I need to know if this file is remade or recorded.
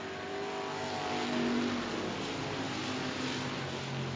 recorded